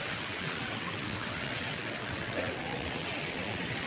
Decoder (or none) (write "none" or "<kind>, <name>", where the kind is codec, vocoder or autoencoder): vocoder, WaveNeXt